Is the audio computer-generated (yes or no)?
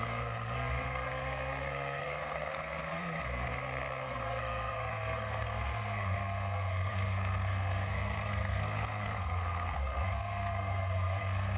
yes